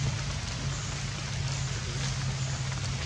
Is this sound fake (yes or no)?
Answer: no